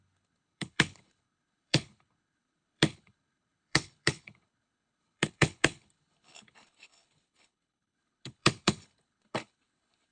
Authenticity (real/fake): fake